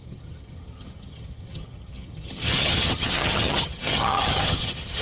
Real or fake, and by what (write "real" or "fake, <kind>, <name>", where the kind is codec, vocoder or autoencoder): fake, vocoder, HiFi-GAN